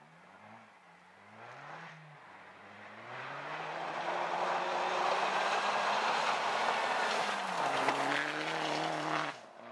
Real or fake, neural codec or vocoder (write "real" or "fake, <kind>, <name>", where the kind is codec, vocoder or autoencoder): real